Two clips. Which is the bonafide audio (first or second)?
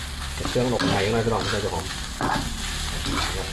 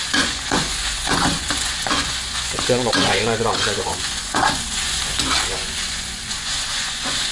first